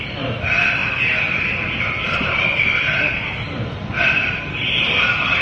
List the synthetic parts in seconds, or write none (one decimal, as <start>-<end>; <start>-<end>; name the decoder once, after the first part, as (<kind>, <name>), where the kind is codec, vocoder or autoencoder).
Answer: 0.0-0.8 (vocoder, BigVGAN v2); 4.0-5.4